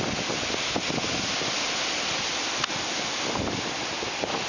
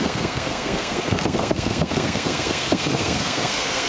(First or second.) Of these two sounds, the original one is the first